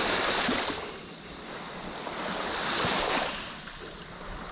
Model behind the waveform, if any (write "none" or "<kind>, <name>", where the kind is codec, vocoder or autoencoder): none